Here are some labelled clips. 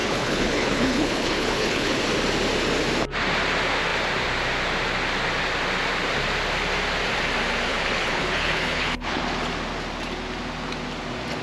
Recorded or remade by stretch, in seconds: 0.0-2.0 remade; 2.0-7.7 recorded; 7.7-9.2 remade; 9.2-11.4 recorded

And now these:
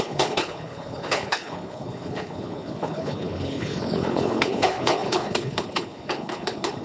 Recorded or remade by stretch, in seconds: 0.0-6.8 remade

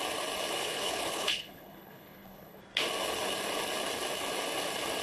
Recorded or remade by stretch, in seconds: 0.0-0.6 recorded; 0.6-2.6 remade; 2.6-5.0 recorded

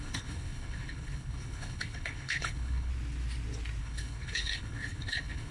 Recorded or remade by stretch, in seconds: 0.0-2.9 remade; 2.9-3.8 recorded; 3.8-5.5 remade

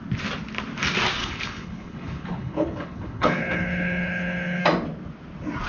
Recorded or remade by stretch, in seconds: 0.0-1.2 recorded; 1.2-4.6 remade; 4.6-5.7 recorded

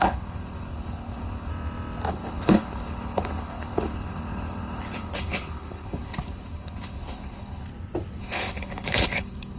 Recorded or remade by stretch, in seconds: 0.0-1.5 remade; 1.5-2.1 recorded; 2.1-7.7 remade; 7.7-8.2 recorded; 8.2-9.6 remade